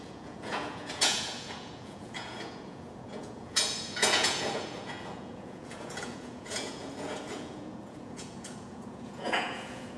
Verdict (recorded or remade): remade